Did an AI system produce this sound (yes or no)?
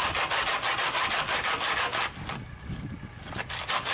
no